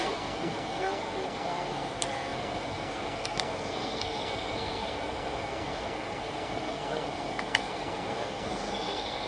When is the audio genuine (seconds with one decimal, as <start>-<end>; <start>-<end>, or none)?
none